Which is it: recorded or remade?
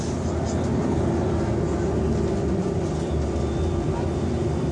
recorded